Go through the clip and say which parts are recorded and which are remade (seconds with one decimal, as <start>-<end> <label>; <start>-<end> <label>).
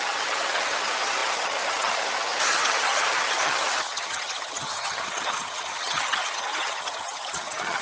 0.0-7.8 remade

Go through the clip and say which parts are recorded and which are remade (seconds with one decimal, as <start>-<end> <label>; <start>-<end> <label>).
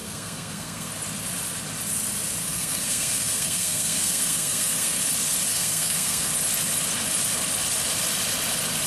0.0-0.9 remade; 0.9-2.4 recorded; 2.4-5.0 remade; 5.0-5.5 recorded; 5.5-6.3 remade; 6.3-8.9 recorded